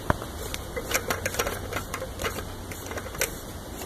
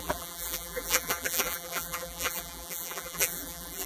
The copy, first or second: second